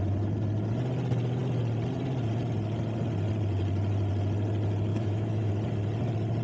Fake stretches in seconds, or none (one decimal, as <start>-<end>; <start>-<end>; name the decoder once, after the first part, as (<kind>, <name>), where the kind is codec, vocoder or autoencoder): 4.9-5.5 (autoencoder, DAC-VAE)